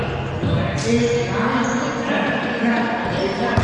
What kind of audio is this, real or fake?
real